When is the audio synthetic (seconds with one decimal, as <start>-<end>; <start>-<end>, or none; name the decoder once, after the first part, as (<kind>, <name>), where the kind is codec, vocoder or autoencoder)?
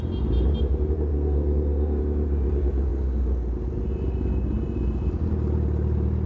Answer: 1.1-2.0 (codec, SNAC)